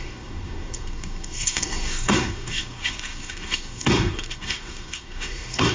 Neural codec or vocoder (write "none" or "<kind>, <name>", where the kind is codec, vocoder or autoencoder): codec, SNAC